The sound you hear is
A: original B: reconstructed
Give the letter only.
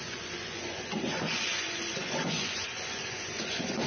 B